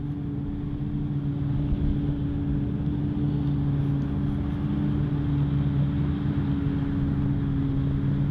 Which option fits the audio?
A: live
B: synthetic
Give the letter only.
A